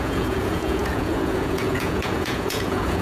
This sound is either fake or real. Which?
fake